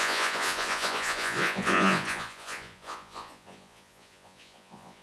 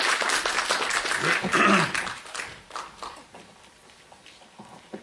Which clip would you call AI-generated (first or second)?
first